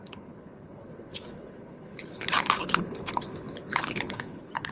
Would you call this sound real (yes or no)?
no